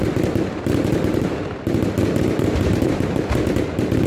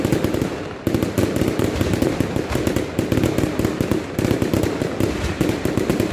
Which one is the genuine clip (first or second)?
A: second